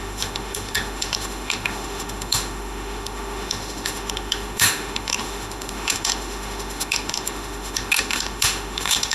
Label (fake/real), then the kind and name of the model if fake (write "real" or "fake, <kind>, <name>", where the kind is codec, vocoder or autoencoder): fake, autoencoder, DAC-VAE